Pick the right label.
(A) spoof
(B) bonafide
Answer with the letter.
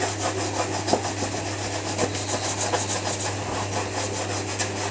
B